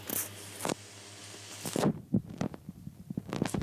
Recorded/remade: remade